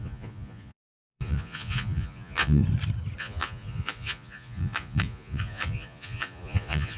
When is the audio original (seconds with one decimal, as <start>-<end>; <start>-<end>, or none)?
2.6-3.2

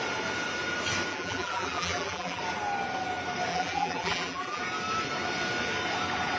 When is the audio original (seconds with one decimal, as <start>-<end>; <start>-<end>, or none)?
0.0-1.1; 2.4-3.5; 4.6-6.4

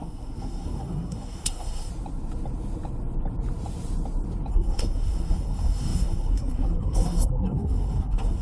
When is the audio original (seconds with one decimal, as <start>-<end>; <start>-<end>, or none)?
1.9-4.5

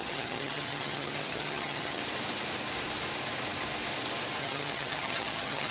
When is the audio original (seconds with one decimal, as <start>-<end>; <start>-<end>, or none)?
2.0-4.4

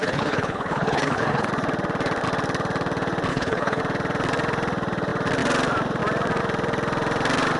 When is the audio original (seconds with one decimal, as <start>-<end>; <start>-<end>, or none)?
1.5-3.3; 3.8-7.6